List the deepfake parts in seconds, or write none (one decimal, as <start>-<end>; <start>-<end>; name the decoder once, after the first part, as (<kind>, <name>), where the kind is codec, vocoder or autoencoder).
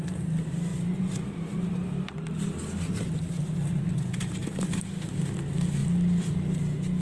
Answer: 0.7-3.8 (vocoder, BigVGAN v2); 4.4-5.1